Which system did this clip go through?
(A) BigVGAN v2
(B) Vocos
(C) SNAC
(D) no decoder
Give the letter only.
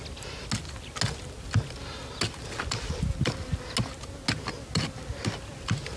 D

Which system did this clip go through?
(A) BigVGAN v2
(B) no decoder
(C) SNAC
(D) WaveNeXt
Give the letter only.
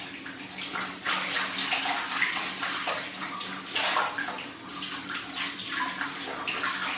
B